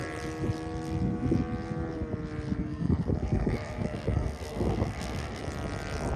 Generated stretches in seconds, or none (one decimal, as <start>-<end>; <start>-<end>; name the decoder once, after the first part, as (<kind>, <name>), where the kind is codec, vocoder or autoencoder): 2.6-5.4 (codec, SNAC)